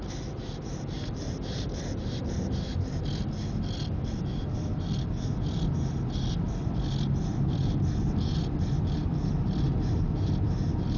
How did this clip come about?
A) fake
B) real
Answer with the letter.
B